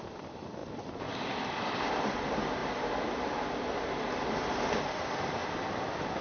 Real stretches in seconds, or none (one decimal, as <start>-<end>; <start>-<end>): 2.6-3.1; 5.4-6.2